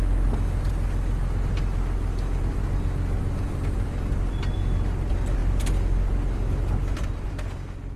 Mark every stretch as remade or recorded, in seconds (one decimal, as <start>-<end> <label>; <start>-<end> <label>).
0.0-0.7 recorded; 0.7-2.4 remade; 2.4-8.0 recorded